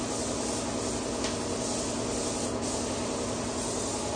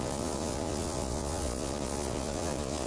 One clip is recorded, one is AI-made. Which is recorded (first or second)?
first